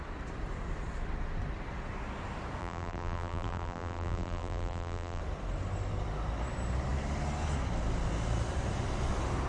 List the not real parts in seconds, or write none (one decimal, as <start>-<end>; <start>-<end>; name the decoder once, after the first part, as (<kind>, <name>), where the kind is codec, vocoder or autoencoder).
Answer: 2.6-5.2 (vocoder, BigVGAN v2)